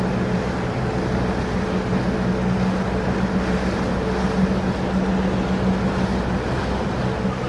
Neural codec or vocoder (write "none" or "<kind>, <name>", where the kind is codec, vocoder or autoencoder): none